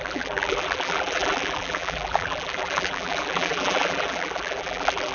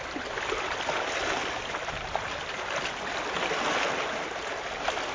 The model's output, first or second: first